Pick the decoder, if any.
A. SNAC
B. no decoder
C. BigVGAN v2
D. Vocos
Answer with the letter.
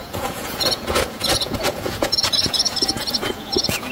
D